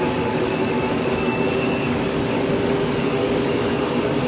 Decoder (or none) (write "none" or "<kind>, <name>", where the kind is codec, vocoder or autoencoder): codec, DAC